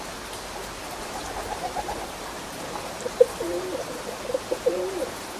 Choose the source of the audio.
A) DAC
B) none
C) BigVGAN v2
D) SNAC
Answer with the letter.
C